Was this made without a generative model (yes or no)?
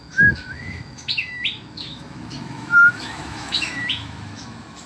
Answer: no